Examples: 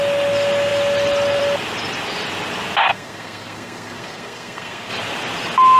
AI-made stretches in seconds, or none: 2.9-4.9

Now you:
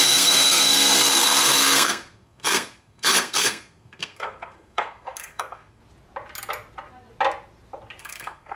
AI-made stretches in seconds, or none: 0.0-5.8; 8.0-8.6

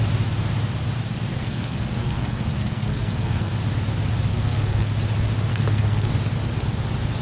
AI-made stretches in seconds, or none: 1.3-3.5; 4.3-4.9; 5.5-6.1

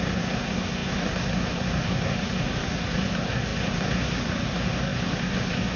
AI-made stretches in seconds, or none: 0.0-5.8

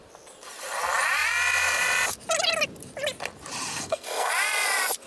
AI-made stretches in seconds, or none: 3.7-4.3